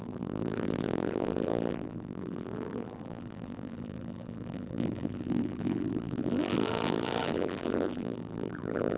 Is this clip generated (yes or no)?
yes